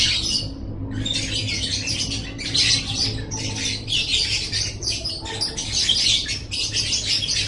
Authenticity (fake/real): real